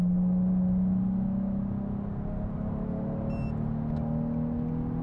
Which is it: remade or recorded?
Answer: recorded